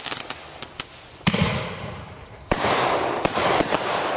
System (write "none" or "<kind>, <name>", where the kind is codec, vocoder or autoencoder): none